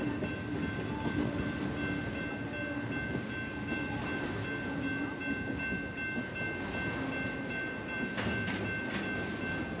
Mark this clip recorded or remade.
recorded